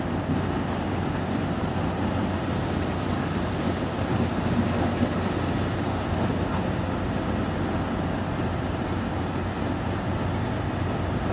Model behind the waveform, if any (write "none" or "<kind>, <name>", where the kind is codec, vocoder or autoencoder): none